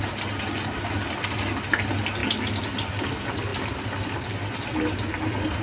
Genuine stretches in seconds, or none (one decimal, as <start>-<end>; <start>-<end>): 0.0-5.6